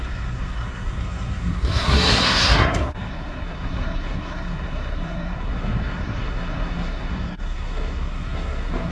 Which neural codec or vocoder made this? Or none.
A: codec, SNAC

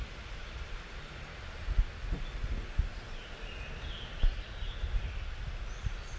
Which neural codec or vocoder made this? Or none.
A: none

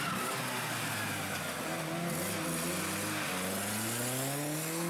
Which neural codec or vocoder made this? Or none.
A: none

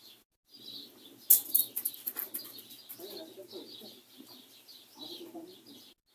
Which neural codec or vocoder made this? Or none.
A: none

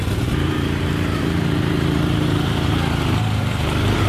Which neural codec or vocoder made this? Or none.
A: vocoder, BigVGAN v2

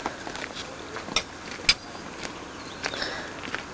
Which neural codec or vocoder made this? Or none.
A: none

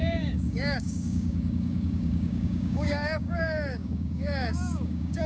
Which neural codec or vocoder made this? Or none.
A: codec, DAC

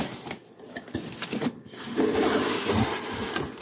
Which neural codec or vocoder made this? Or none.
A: none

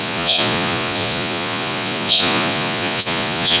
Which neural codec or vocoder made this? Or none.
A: vocoder, Vocos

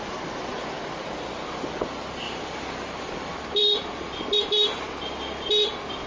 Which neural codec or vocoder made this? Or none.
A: none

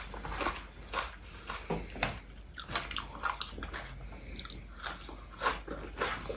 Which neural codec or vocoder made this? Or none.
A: none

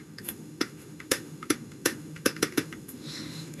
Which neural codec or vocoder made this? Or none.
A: autoencoder, DAC-VAE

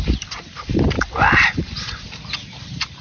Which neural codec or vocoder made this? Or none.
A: vocoder, BigVGAN v2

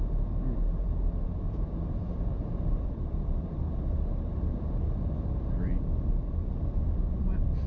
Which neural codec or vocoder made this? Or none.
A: vocoder, BigVGAN v2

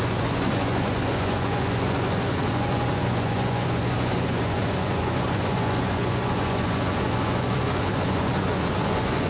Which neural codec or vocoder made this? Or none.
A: vocoder, Vocos